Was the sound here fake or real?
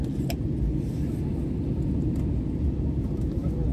real